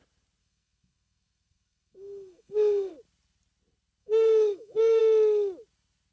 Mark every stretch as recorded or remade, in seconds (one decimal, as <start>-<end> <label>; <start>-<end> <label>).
0.0-0.4 recorded; 0.4-2.9 remade; 2.9-4.0 recorded; 4.0-5.0 remade; 5.0-6.1 recorded